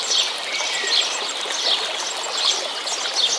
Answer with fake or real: real